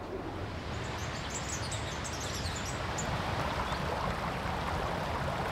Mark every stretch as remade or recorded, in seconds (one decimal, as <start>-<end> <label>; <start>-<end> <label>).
0.0-5.5 recorded

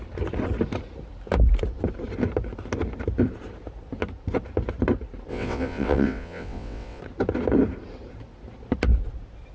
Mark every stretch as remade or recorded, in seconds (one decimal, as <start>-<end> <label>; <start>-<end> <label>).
0.0-5.3 recorded; 5.3-7.0 remade; 7.0-9.5 recorded

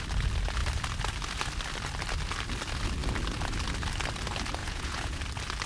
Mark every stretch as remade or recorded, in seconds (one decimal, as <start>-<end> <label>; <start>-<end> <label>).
0.0-4.6 recorded; 4.6-5.2 remade; 5.2-5.7 recorded